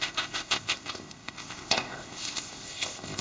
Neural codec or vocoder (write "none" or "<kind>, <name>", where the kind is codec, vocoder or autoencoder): codec, ZipCodec